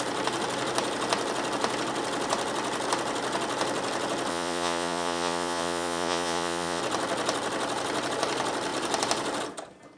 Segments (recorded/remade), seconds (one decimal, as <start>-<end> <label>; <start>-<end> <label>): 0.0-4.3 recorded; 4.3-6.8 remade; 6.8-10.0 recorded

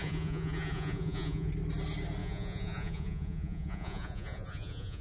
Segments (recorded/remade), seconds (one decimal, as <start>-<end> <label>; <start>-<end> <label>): 0.0-1.5 remade; 1.5-2.2 recorded; 2.2-5.0 remade

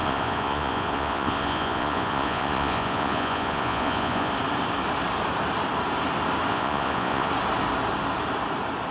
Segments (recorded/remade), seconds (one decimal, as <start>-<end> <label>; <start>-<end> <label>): 0.0-4.3 remade; 4.3-6.5 recorded; 6.5-7.3 remade; 7.3-8.9 recorded